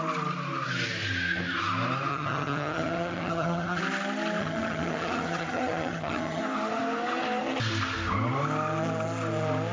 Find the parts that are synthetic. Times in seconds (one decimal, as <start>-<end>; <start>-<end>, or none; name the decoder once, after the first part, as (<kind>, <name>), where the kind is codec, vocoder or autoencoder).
2.1-3.8 (vocoder, HiFi-GAN); 4.4-6.4